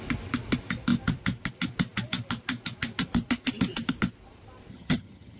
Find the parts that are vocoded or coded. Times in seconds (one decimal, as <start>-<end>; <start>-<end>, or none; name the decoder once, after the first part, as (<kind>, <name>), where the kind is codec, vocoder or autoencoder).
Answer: 4.7-5.4 (vocoder, HiFi-GAN)